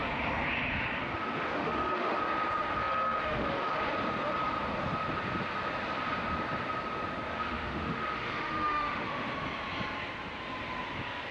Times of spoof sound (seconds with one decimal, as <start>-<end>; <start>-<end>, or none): 1.2-2.2; 2.6-3.8; 7.3-9.3